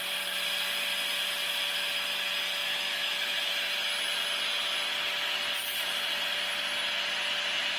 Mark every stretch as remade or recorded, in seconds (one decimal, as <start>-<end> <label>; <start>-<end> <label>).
0.0-2.6 recorded; 2.6-3.5 remade; 3.5-7.8 recorded